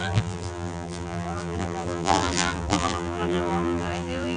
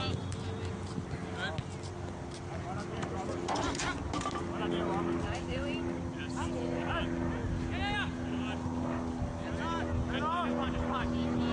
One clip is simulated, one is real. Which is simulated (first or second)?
first